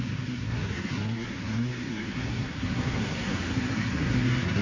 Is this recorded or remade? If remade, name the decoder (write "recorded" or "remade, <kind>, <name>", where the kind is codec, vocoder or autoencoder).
remade, codec, SNAC